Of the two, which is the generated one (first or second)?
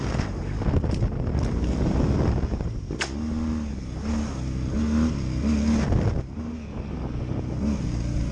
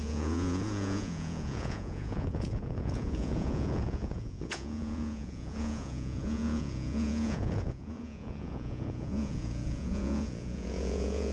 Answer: second